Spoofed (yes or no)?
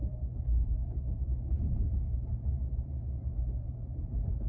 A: yes